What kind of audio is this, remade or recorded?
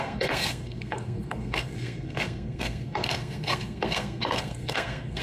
remade